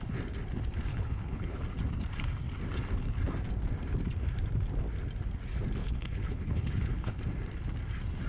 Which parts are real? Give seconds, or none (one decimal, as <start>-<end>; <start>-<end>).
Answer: 0.0-0.9; 1.6-5.8; 7.2-8.3

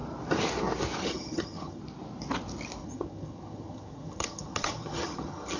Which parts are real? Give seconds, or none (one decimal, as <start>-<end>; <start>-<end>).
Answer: 0.0-1.0; 1.8-2.8

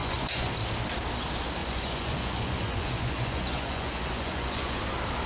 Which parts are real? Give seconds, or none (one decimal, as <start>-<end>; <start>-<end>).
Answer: 0.5-1.6; 4.8-5.3

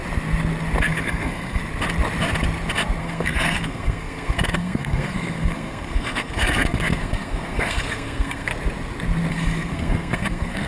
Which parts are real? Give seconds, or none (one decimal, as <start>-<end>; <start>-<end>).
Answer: 0.0-0.8; 1.6-3.0; 8.5-9.3

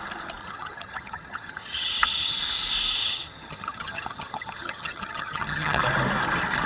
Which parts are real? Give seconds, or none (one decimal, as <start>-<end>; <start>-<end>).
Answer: 0.0-0.4; 2.4-3.0; 5.8-6.7

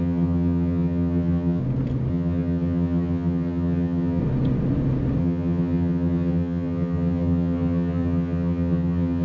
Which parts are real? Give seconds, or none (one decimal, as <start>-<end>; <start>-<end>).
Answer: 1.6-2.1; 4.2-5.2